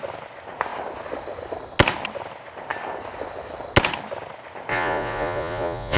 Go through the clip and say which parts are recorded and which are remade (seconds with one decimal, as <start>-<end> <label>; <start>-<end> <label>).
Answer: 0.0-4.7 recorded; 4.7-6.0 remade